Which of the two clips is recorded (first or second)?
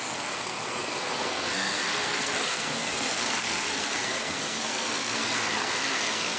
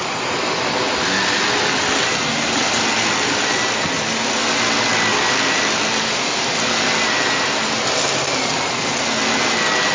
second